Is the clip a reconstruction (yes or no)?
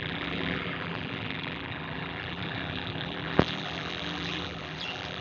yes